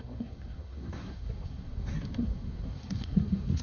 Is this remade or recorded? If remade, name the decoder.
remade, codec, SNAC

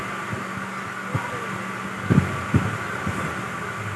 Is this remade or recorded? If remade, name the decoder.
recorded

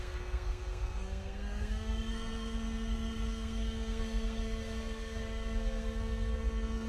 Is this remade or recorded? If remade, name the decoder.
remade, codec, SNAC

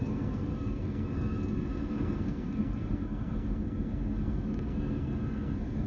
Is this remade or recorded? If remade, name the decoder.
remade, codec, SNAC